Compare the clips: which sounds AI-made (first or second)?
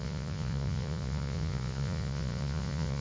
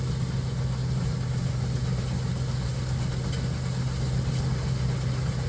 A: first